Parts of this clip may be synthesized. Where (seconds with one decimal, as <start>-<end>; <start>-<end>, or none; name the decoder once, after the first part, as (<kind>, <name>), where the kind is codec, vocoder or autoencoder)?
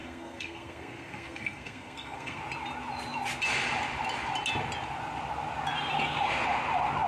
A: 0.0-2.4 (codec, SNAC)